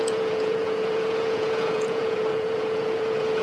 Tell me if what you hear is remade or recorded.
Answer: remade